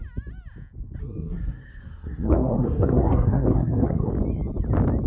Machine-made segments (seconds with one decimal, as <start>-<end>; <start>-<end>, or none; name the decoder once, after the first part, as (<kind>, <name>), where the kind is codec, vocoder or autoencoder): 1.0-4.1 (codec, SNAC)